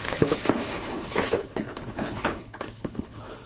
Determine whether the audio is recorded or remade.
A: remade